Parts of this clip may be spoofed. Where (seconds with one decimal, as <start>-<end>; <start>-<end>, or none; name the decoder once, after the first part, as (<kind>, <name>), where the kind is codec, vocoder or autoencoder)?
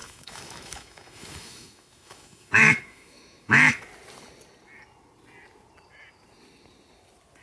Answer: 0.0-3.8 (autoencoder, DAC-VAE)